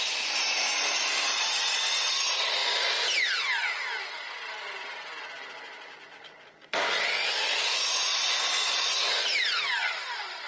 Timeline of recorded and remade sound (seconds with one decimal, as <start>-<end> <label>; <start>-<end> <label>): 0.0-10.5 recorded